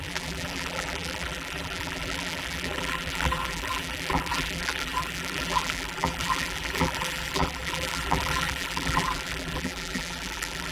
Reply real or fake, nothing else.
fake